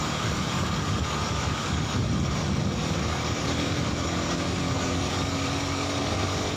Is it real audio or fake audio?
fake